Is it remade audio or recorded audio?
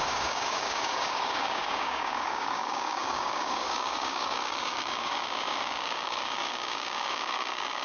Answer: remade